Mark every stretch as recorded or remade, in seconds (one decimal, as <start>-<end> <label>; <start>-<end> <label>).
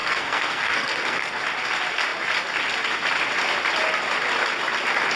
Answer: 0.0-1.4 remade; 1.4-5.2 recorded